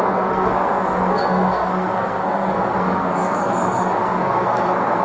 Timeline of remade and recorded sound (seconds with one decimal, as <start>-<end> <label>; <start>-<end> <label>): 0.0-5.0 remade